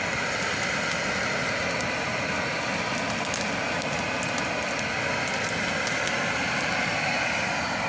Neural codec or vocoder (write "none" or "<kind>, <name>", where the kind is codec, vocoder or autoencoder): none